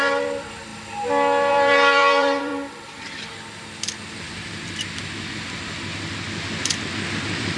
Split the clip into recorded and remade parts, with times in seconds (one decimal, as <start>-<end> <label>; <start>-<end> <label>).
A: 0.0-0.7 remade; 0.7-1.5 recorded; 1.5-2.5 remade; 2.5-7.1 recorded; 7.1-7.6 remade